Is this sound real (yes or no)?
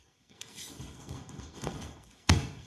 no